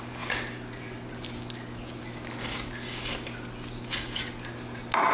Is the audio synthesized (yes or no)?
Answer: no